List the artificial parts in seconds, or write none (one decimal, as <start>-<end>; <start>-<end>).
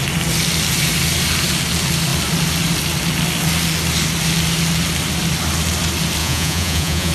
6.2-7.1